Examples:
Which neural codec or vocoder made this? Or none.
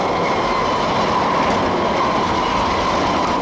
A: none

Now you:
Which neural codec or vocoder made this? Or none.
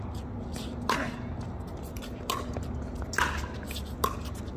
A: none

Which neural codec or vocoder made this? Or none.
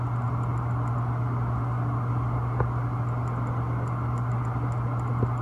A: none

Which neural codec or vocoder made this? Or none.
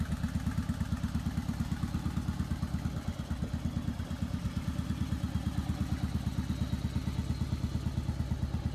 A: none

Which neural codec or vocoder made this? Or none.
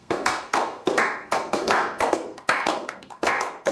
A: codec, SNAC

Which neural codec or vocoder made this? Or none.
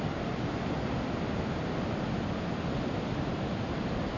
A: none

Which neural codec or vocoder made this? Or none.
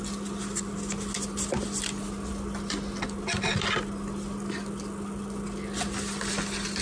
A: none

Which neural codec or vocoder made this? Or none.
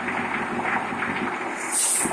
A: none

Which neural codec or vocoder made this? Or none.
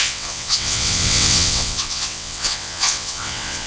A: vocoder, WaveNeXt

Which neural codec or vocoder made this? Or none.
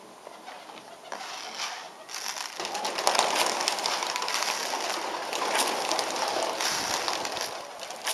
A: none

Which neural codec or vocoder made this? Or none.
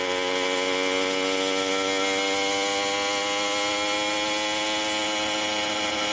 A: none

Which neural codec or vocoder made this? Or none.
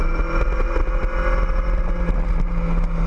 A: none